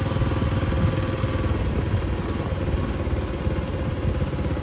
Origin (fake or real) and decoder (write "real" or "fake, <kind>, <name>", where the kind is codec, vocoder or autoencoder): real